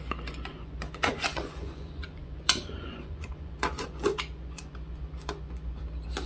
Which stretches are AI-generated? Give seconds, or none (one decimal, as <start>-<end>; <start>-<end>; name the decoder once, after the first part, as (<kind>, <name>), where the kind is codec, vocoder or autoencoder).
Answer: 0.0-5.8 (vocoder, Vocos)